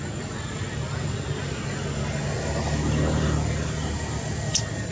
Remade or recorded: recorded